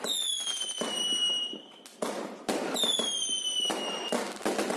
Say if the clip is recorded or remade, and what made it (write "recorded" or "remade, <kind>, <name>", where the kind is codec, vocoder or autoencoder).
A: recorded